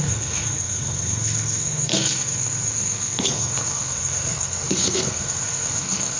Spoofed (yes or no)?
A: yes